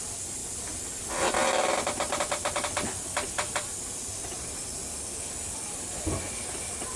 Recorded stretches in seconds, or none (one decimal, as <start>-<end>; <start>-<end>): 0.0-7.0